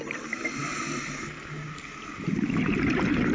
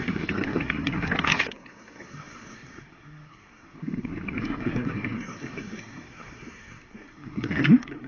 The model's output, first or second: second